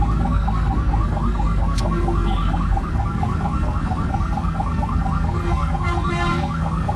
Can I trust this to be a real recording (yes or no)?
no